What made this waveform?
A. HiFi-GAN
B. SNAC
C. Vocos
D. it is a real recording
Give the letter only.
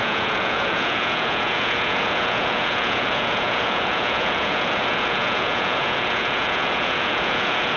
C